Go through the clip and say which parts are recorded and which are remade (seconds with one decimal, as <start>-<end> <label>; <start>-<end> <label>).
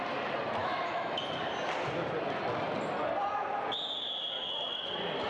0.0-0.6 recorded; 0.6-1.2 remade; 1.2-5.3 recorded